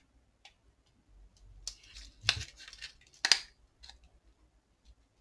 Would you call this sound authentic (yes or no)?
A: yes